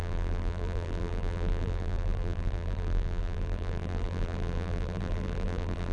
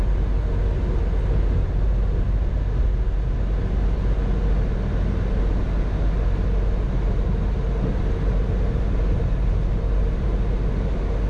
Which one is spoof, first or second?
first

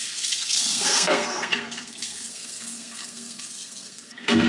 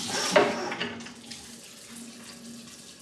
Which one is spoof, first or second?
first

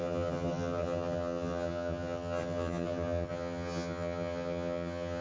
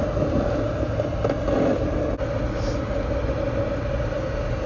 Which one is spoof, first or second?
first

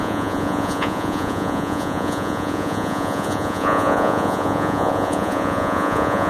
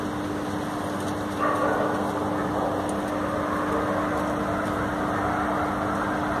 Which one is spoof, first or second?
first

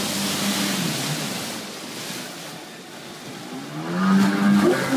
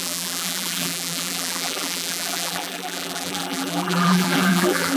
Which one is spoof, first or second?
second